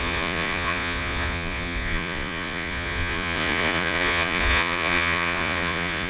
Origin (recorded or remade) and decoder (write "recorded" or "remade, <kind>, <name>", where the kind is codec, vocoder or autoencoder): remade, vocoder, Vocos